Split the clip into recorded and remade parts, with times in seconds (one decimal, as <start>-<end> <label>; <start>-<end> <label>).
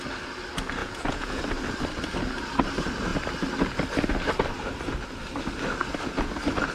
0.0-0.8 recorded; 0.8-1.4 remade; 1.4-6.7 recorded